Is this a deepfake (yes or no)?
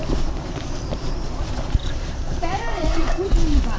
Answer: yes